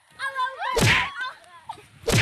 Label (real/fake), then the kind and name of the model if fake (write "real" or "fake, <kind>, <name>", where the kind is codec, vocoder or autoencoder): real